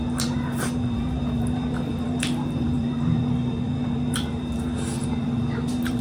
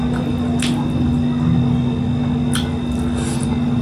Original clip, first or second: second